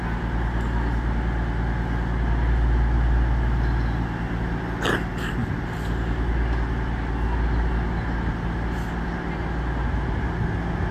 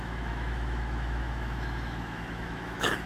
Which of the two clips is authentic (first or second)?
first